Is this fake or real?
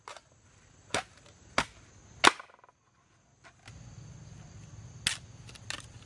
real